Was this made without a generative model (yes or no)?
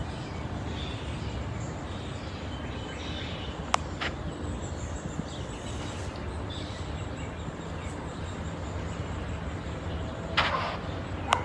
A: yes